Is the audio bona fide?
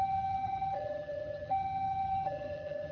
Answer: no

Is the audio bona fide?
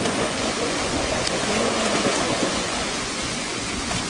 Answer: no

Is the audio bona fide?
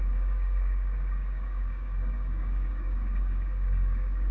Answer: no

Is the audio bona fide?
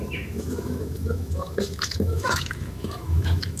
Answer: no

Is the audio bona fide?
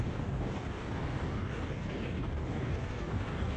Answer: no